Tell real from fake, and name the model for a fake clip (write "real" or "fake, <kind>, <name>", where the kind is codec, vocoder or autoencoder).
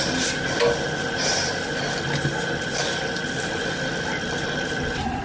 real